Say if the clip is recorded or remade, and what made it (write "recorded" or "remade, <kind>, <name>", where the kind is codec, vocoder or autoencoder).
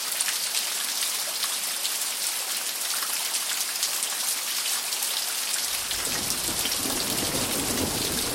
recorded